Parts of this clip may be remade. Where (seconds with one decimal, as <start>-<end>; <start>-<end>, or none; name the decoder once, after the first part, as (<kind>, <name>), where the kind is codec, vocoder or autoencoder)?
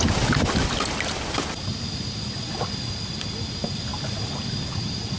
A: none